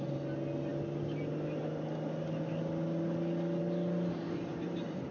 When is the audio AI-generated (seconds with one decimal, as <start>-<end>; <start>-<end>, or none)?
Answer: none